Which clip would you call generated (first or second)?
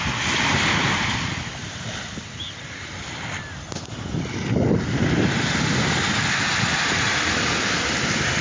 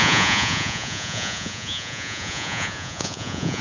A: second